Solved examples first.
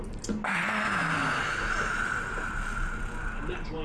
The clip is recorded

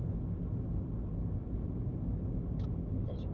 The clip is recorded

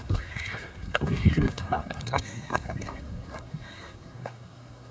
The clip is remade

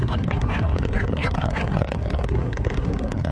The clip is remade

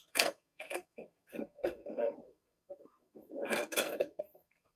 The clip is remade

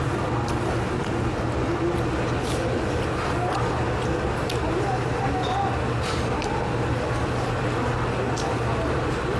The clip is recorded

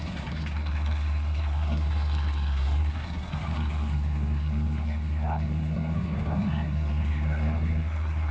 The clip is remade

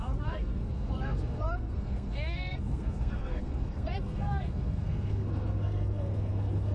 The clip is remade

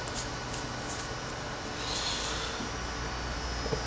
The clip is recorded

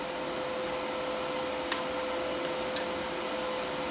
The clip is recorded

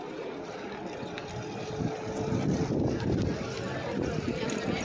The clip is recorded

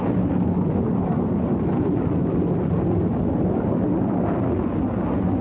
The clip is recorded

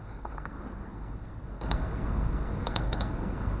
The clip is remade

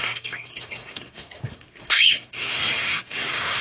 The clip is remade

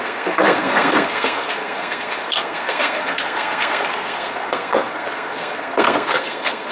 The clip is remade